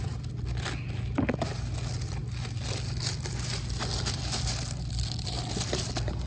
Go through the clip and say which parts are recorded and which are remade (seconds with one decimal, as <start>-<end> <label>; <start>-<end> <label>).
0.0-6.3 recorded